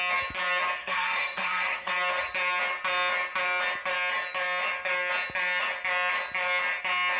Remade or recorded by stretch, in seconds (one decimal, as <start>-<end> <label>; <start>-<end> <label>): 0.0-0.8 recorded; 0.8-1.9 remade; 1.9-7.2 recorded